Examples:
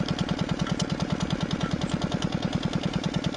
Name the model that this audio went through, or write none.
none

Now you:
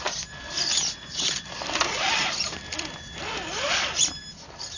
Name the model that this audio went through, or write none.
none